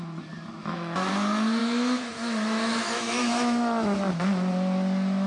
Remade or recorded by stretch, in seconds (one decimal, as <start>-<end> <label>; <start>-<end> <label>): 0.0-0.6 recorded; 0.6-1.1 remade; 1.1-1.6 recorded; 1.6-4.1 remade; 4.1-5.3 recorded